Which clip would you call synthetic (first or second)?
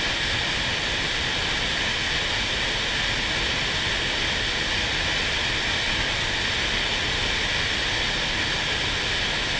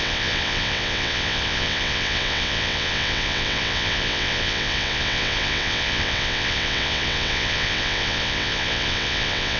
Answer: second